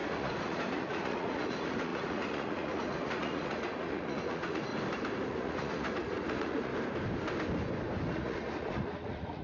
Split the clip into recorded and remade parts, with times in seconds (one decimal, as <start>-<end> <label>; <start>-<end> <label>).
0.0-4.7 remade; 4.7-5.3 recorded; 5.3-6.7 remade; 6.7-8.1 recorded; 8.1-9.4 remade